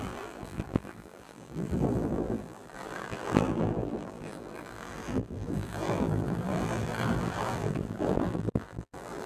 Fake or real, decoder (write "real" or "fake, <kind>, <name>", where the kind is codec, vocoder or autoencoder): fake, vocoder, BigVGAN v2